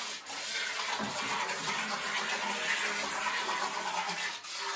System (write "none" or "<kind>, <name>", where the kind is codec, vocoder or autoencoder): none